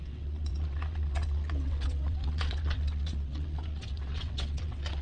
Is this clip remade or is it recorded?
remade